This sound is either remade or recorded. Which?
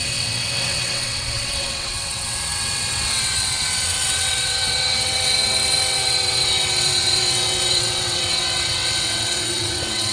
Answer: remade